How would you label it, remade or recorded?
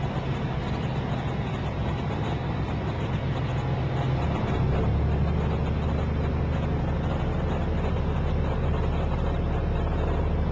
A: recorded